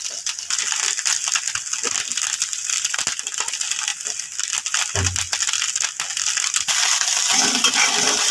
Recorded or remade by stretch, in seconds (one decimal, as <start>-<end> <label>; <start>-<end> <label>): 0.0-8.3 recorded